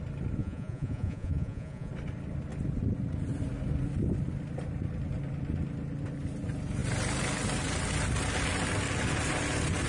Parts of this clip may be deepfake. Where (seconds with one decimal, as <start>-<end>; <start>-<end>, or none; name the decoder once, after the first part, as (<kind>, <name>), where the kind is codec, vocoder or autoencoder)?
0.4-1.9 (vocoder, Vocos)